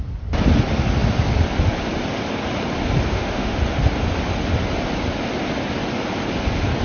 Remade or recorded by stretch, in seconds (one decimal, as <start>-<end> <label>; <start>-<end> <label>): 0.0-3.1 recorded; 3.1-3.6 remade; 3.6-6.8 recorded